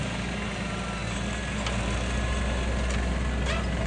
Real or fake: real